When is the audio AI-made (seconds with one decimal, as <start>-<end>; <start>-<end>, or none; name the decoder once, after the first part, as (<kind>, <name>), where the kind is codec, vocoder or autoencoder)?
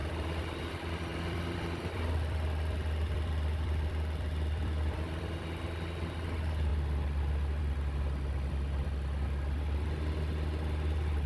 0.0-0.7 (vocoder, BigVGAN v2); 1.1-5.4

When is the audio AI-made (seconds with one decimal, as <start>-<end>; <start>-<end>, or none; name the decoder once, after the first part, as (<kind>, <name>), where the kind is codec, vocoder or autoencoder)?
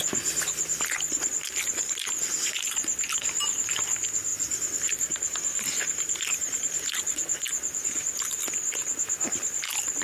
4.3-4.9 (vocoder, BigVGAN v2)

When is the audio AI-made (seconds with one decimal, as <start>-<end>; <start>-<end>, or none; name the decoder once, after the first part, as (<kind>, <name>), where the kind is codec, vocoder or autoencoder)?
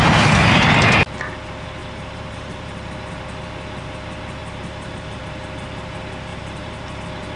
1.8-2.9 (vocoder, BigVGAN v2); 4.4-5.2; 6.3-7.0